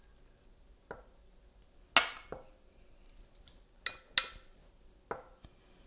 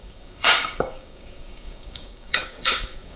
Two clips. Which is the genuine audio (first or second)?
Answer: first